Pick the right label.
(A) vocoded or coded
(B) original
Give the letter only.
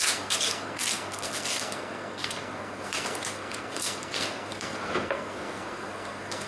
A